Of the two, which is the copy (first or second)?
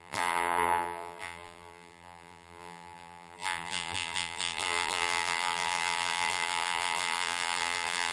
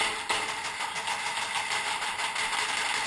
first